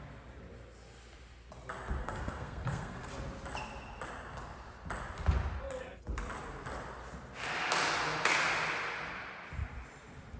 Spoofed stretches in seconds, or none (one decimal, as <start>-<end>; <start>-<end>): 2.0-3.1

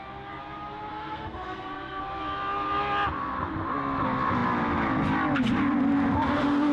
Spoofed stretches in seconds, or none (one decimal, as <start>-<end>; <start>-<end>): 0.9-2.0

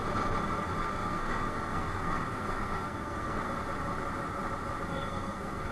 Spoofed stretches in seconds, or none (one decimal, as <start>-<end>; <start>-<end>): 0.8-3.6; 4.9-5.7

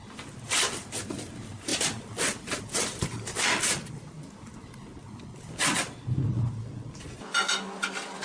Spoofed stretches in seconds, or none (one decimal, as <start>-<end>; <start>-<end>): none